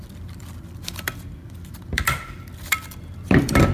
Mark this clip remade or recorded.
remade